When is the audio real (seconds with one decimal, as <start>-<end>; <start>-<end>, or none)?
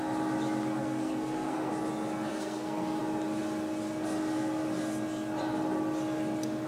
0.0-0.8; 1.7-2.3; 3.0-6.7